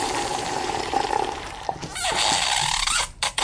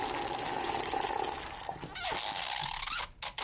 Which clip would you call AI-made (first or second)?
first